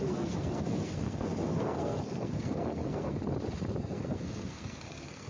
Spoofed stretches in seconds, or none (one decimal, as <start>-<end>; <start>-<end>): 0.0-3.2; 3.8-5.3